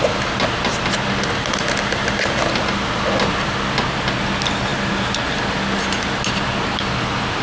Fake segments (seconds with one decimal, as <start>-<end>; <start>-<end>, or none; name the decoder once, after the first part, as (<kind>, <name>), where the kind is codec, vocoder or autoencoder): none

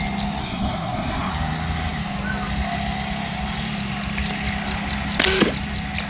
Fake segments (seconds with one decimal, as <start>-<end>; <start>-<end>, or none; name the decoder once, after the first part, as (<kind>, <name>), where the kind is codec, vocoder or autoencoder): 0.4-1.3 (codec, SNAC)

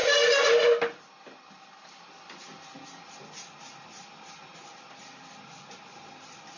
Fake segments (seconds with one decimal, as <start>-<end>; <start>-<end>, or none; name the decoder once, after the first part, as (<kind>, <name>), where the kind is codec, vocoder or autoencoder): none